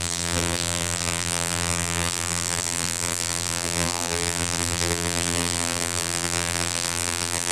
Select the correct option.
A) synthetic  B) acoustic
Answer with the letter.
A